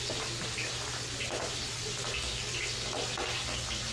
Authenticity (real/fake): real